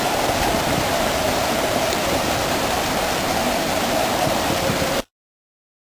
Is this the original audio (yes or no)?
no